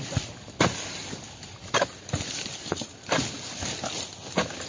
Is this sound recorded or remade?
recorded